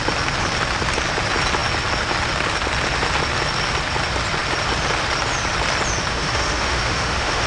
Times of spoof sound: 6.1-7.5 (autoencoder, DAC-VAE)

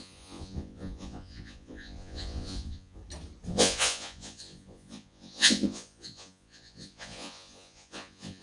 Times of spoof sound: 0.0-3.0 (vocoder, Vocos); 3.5-8.4